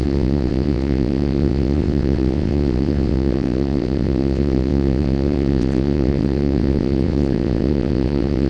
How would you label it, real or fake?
fake